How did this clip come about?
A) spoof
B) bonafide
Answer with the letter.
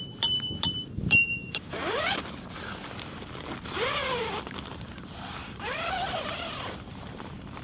A